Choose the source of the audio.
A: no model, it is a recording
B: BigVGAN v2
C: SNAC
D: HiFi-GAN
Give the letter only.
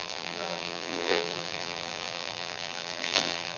B